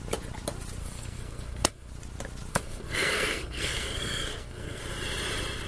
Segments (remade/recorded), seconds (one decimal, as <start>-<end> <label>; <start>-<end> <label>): 0.0-0.8 recorded; 0.8-1.9 remade; 1.9-2.5 recorded; 2.5-4.8 remade; 4.8-5.7 recorded